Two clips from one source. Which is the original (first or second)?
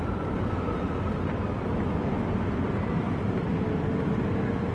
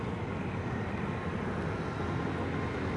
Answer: second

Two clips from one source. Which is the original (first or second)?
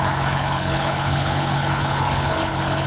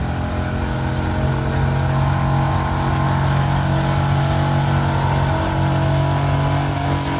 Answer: second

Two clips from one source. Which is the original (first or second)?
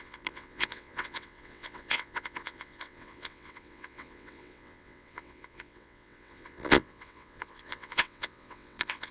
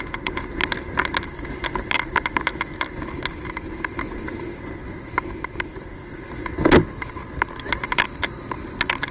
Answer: second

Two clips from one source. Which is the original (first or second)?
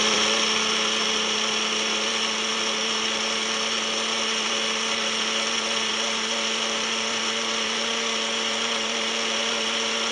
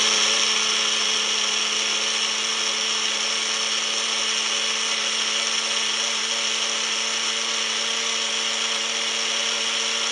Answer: second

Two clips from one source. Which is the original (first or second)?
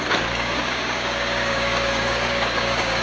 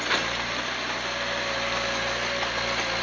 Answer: second